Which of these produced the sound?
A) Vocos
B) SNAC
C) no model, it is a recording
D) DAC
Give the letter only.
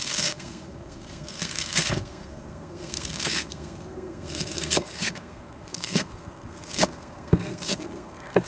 B